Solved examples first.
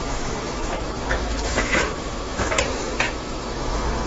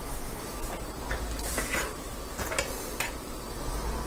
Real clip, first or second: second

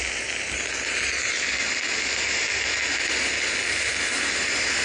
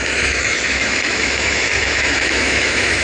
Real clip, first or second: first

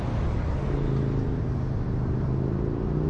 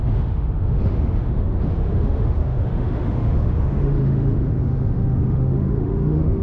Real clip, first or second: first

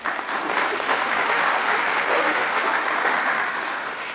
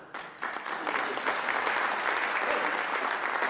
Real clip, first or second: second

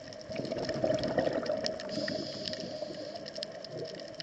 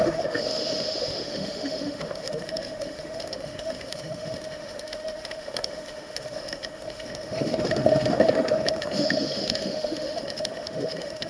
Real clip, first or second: first